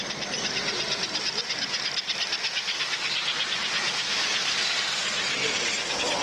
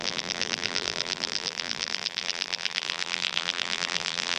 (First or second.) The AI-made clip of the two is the second